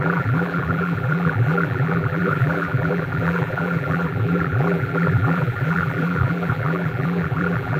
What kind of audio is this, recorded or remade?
remade